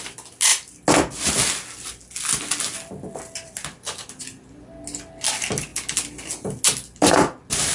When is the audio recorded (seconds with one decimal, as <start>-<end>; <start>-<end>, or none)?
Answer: 0.0-7.7